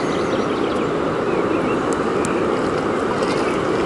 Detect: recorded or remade recorded